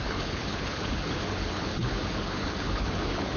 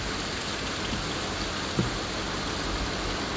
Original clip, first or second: second